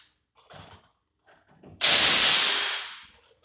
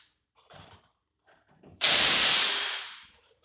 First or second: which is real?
first